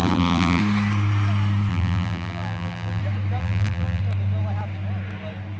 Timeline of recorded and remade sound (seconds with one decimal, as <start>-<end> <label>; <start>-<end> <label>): 0.0-0.6 remade; 0.6-1.7 recorded; 1.7-3.0 remade; 3.0-3.4 recorded; 3.4-4.0 remade; 4.0-5.6 recorded